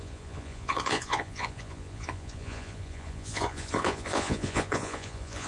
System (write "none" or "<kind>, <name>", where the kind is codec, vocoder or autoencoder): vocoder, Vocos